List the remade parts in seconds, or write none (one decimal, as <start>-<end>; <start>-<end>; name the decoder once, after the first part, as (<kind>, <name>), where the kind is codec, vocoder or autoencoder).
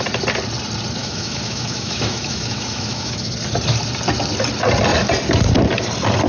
1.0-3.3 (autoencoder, DAC-VAE)